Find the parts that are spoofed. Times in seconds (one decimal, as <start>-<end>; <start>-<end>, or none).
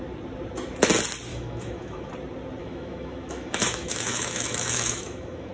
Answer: 1.3-2.1; 2.6-5.5